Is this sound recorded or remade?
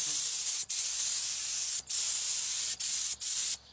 recorded